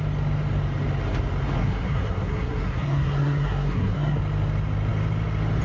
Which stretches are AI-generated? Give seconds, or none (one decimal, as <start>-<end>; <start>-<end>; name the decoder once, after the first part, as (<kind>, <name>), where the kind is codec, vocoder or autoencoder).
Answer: 1.6-4.2 (codec, SNAC)